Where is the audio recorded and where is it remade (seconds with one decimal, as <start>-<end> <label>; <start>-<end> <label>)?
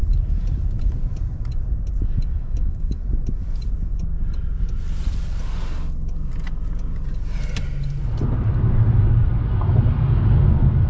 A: 0.0-2.4 recorded; 2.4-3.0 remade; 3.0-10.9 recorded